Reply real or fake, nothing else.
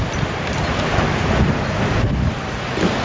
real